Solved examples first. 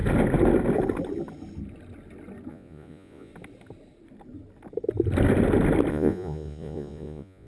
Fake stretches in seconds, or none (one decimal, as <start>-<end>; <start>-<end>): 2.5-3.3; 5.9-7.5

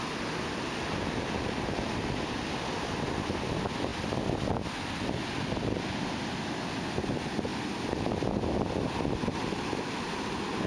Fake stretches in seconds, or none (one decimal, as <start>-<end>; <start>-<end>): none

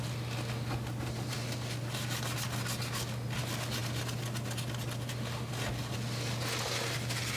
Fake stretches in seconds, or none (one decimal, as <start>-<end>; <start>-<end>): none

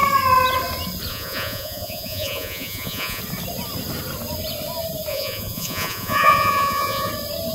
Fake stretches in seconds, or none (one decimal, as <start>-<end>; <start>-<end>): 1.1-3.2; 5.1-7.1

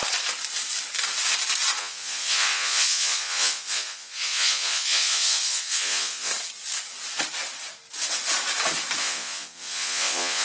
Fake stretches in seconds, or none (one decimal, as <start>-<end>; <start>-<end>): 1.8-6.3; 9.0-10.4